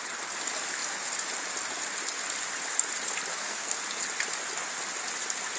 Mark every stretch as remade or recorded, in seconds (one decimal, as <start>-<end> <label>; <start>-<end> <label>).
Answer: 0.0-3.3 recorded; 3.3-3.8 remade; 3.8-5.6 recorded